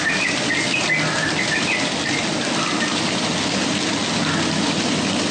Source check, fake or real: real